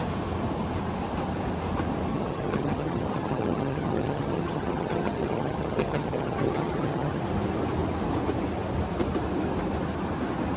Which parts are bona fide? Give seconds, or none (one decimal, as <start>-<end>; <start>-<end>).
0.0-2.1; 7.2-10.6